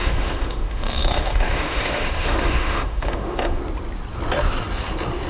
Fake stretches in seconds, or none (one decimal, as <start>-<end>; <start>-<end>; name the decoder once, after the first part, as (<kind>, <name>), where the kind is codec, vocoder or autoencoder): 0.0-3.6 (autoencoder, DAC-VAE)

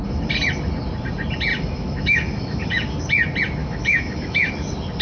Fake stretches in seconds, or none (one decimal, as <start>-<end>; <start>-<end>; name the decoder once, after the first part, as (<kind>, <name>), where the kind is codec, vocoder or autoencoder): 1.5-3.0 (autoencoder, DAC-VAE); 3.6-4.5

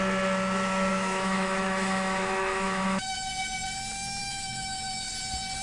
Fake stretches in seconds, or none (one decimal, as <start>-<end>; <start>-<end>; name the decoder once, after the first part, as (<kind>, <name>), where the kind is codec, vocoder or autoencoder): 0.9-3.3 (autoencoder, DAC-VAE); 4.2-5.1

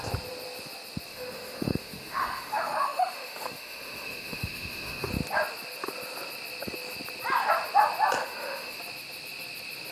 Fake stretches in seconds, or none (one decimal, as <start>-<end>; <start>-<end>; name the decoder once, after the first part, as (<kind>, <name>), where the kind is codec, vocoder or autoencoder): 1.1-5.1 (autoencoder, DAC-VAE); 8.2-8.8

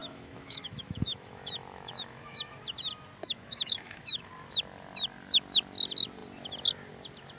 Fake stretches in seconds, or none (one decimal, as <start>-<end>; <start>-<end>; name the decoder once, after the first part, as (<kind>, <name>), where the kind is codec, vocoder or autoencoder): 0.0-2.6 (autoencoder, DAC-VAE); 3.2-4.3

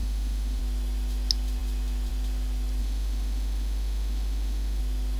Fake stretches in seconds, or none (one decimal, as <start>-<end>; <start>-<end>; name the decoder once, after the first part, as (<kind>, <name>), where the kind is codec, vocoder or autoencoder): 0.0-0.6 (autoencoder, DAC-VAE); 2.8-4.8

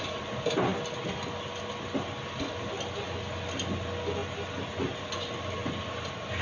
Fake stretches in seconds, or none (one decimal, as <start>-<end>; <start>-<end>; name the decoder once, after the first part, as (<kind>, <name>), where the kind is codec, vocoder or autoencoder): none

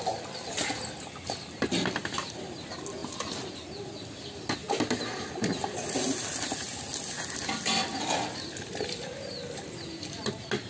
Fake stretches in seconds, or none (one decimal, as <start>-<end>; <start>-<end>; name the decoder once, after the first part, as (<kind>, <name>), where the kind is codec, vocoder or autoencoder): none